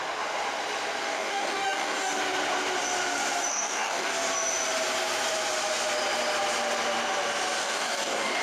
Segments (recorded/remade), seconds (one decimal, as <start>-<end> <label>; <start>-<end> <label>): 0.0-1.0 recorded; 1.0-2.2 remade; 2.2-3.5 recorded; 3.5-4.1 remade; 4.1-7.6 recorded; 7.6-8.4 remade